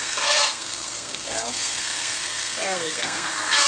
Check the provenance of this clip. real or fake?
fake